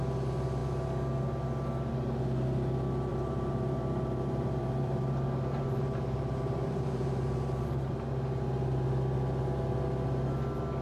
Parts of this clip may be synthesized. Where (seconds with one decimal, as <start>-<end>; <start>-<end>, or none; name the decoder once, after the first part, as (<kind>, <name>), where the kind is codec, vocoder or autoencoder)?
3.1-7.9 (vocoder, BigVGAN v2)